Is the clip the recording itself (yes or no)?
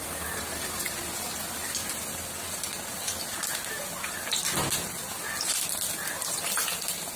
yes